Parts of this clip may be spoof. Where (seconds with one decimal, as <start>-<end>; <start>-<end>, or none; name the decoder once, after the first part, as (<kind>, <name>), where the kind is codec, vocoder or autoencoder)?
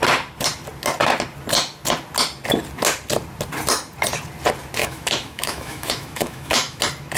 4.8-6.8 (autoencoder, DAC-VAE)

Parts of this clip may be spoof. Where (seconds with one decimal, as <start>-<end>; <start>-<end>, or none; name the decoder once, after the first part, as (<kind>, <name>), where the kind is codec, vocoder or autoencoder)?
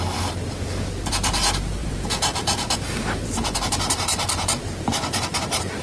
1.8-2.9 (vocoder, Vocos)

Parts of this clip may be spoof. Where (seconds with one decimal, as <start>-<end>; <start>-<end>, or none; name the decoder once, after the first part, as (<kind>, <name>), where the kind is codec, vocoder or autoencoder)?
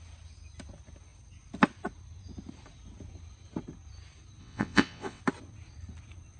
4.4-5.2 (vocoder, WaveNeXt)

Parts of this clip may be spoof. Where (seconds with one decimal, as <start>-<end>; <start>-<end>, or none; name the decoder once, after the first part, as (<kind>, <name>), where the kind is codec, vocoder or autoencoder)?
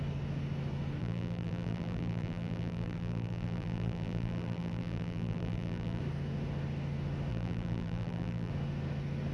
1.0-6.0 (vocoder, BigVGAN v2); 7.3-8.5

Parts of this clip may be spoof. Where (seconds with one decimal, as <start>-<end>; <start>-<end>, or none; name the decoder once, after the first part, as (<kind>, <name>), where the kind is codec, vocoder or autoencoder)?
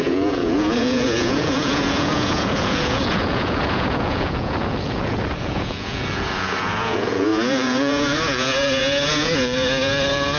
0.0-10.4 (vocoder, Vocos)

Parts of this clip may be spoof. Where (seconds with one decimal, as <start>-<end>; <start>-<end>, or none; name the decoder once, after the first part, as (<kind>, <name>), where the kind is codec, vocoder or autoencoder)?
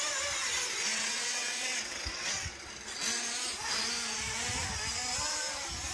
0.9-2.7 (vocoder, WaveNeXt)